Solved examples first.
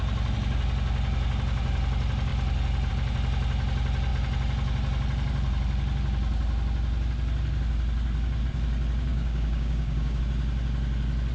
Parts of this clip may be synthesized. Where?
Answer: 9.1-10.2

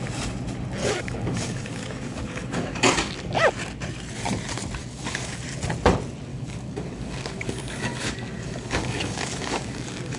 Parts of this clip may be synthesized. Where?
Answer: 0.8-3.1; 4.8-5.4; 6.3-10.2

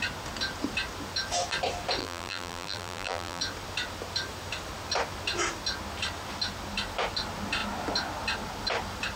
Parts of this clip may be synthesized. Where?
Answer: 2.0-3.4

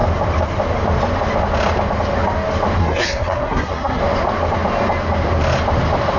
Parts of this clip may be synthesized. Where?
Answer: 2.8-4.0

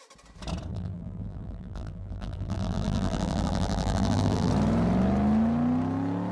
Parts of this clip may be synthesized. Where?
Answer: 0.7-4.5

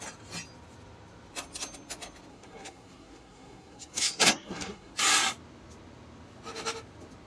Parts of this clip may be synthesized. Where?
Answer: 2.3-4.9

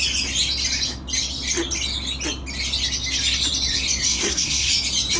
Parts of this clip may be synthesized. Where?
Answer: 4.1-4.7